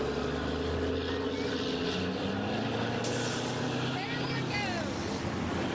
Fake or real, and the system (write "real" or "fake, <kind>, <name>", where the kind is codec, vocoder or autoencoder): real